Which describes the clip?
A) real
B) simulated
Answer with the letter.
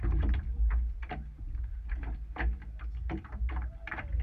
A